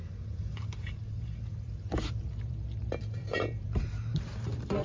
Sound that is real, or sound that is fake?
fake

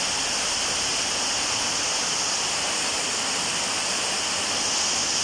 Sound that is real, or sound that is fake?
real